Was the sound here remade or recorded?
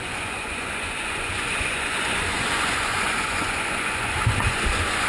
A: remade